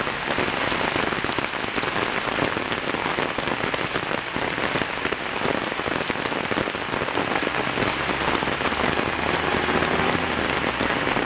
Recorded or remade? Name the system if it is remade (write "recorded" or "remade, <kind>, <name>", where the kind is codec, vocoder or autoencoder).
recorded